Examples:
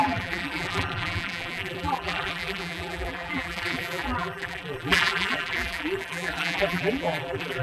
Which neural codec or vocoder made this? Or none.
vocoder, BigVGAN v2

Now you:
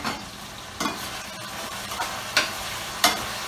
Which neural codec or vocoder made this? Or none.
vocoder, BigVGAN v2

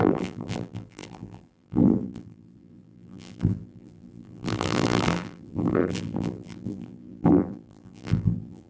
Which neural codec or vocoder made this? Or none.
vocoder, BigVGAN v2